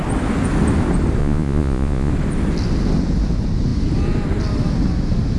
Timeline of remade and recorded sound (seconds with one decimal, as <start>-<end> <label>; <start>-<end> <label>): 0.0-1.2 recorded; 1.2-2.1 remade; 2.1-5.4 recorded